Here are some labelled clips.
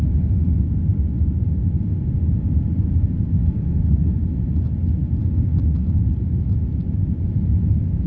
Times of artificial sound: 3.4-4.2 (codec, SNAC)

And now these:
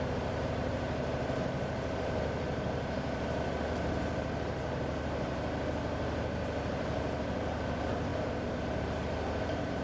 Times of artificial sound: 0.0-8.1 (vocoder, BigVGAN v2); 8.8-9.8

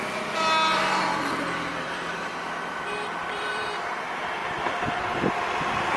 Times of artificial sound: 1.7-2.3 (vocoder, BigVGAN v2); 3.2-3.8; 4.4-5.3

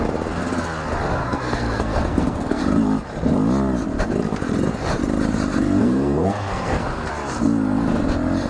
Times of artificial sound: 1.2-2.6 (codec, SNAC); 5.8-7.1

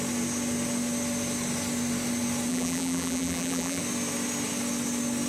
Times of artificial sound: 2.5-3.8 (vocoder, BigVGAN v2)

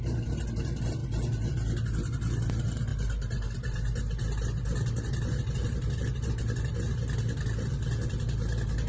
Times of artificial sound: none